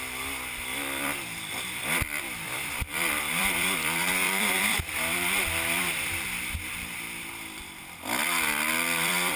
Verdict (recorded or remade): remade